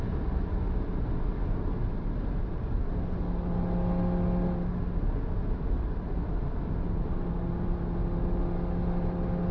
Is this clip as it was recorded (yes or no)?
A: yes